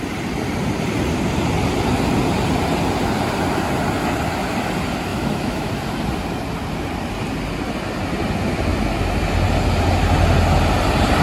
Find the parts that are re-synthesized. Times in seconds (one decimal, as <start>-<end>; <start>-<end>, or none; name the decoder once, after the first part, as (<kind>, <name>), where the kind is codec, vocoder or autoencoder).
5.1-5.7 (autoencoder, DAC-VAE)